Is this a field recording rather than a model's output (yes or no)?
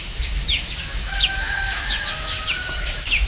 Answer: no